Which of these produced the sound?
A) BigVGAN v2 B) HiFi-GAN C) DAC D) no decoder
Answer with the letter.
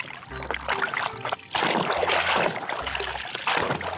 D